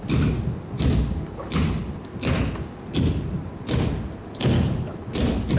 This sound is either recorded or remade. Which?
recorded